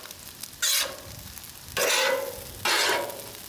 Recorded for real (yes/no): yes